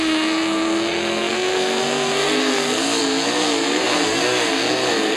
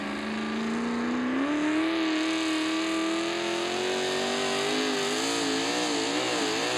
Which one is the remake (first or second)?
first